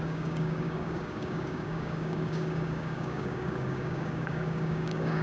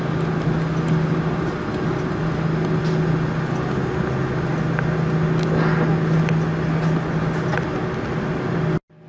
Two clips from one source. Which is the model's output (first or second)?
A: first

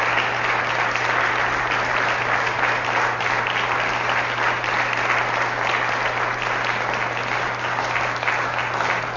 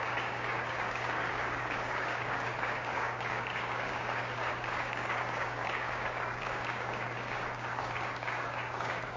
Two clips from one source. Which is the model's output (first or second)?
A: second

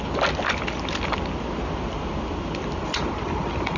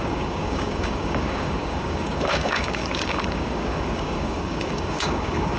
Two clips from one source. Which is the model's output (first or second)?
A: second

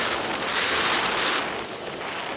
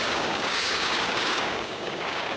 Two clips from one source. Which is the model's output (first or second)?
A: second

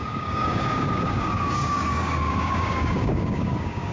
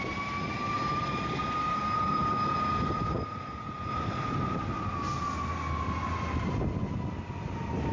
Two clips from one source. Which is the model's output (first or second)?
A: first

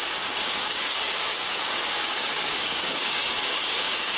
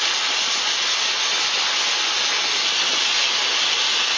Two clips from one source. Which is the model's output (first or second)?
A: first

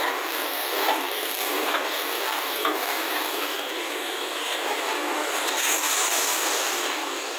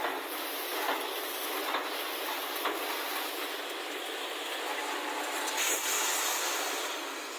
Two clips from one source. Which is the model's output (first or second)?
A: first